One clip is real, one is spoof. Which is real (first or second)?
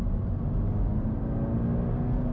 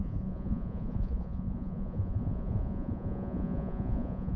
first